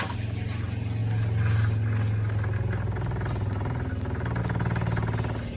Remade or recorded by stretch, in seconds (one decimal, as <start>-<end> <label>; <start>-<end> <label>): 0.0-5.6 recorded